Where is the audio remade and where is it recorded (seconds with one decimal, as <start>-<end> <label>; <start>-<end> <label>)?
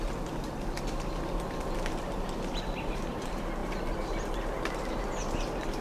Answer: 0.0-5.8 recorded